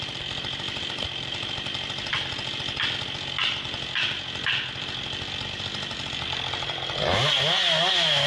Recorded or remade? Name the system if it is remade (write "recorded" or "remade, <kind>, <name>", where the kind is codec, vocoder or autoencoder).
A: recorded